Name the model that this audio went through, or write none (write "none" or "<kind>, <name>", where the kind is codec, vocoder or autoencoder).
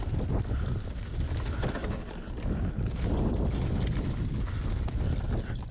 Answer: none